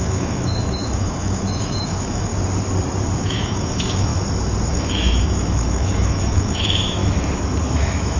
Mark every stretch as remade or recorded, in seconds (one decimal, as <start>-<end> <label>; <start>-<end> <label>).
0.0-2.3 remade; 2.3-3.2 recorded; 3.2-4.1 remade; 4.1-4.7 recorded; 4.7-7.0 remade; 7.0-7.7 recorded; 7.7-8.2 remade